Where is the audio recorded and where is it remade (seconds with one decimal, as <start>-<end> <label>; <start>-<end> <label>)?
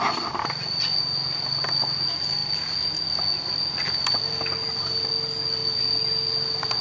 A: 0.0-6.8 recorded